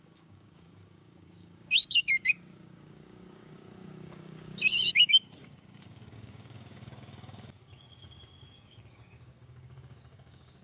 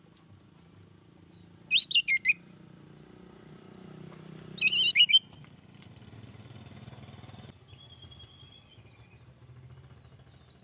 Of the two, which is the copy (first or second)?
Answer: first